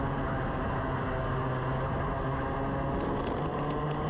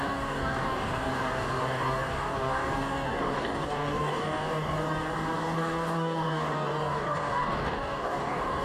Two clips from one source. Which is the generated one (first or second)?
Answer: second